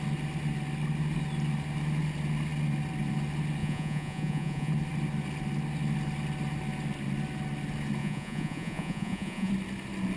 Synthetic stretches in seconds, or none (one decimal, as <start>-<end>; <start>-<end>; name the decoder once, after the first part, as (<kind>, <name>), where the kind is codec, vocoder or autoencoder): 3.6-4.7 (vocoder, Vocos); 8.0-9.5